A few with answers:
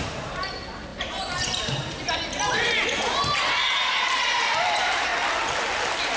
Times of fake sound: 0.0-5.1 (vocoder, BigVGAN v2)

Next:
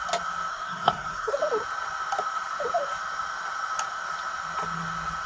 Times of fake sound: 0.5-1.4 (codec, SNAC)

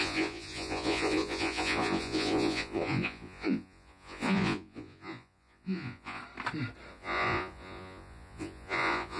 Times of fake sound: 0.0-6.2 (vocoder, Vocos); 6.9-9.2

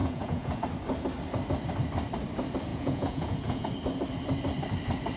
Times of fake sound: 0.0-0.6 (vocoder, Vocos); 2.7-3.7

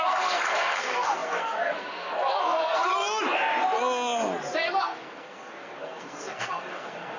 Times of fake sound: 0.0-2.9 (codec, SNAC); 4.8-7.2